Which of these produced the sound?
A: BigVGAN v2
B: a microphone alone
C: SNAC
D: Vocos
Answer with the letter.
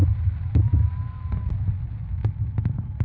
B